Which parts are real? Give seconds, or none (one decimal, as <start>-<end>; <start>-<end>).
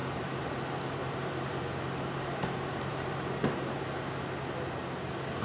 0.5-1.0; 3.7-5.4